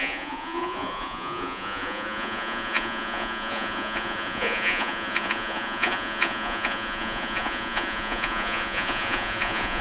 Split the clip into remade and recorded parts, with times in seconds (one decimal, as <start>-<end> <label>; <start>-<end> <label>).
0.0-9.8 remade